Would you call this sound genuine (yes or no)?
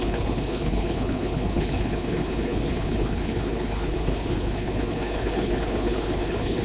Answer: no